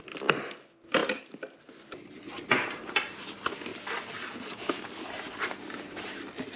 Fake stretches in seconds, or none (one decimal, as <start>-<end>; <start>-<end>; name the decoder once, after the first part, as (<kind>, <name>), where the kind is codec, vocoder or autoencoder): none